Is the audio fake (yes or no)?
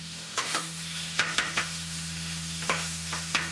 yes